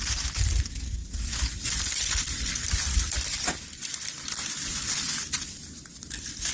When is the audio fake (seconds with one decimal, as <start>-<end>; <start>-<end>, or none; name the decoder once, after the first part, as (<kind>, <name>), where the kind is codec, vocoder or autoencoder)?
none